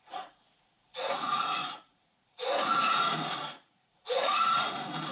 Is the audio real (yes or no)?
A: no